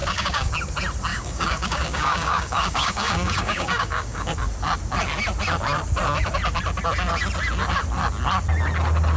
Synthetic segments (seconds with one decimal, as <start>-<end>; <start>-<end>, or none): 0.0-0.5; 1.1-4.3